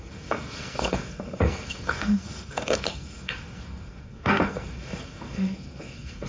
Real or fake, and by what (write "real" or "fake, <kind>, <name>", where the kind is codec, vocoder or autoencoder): fake, codec, SNAC